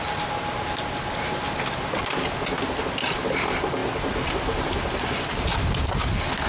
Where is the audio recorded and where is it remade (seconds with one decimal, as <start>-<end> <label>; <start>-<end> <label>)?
0.0-6.5 recorded